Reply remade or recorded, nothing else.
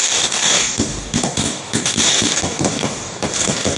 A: remade